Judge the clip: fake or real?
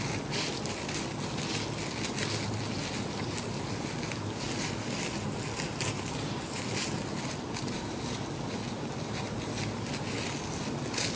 real